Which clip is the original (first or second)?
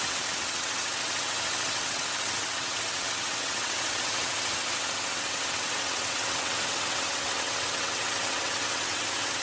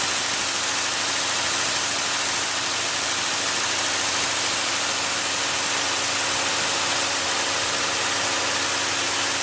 second